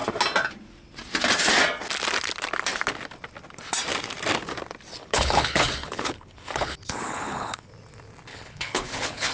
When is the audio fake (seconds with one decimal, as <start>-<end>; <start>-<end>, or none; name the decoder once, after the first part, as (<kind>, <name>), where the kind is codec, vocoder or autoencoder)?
5.0-7.7 (codec, HILCodec); 8.3-9.3